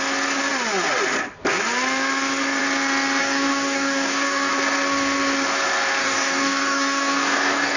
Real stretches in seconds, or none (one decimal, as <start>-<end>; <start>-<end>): 0.0-3.2; 4.5-6.0